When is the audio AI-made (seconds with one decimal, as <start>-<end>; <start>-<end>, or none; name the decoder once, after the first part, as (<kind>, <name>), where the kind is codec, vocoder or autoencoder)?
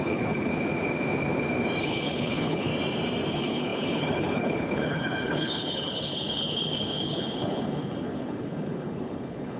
0.0-0.5 (codec, HILCodec); 1.8-2.7; 3.3-9.6